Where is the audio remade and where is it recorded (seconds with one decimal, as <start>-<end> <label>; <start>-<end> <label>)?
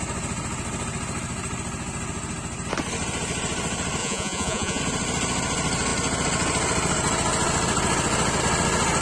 0.0-4.0 recorded; 4.0-4.8 remade; 4.8-9.0 recorded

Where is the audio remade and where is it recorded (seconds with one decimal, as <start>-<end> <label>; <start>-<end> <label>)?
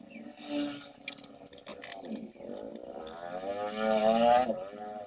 0.0-5.1 recorded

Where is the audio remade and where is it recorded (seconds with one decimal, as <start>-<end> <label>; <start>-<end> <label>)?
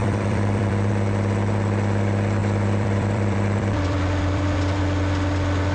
0.0-0.9 remade; 0.9-2.4 recorded; 2.4-4.8 remade; 4.8-5.7 recorded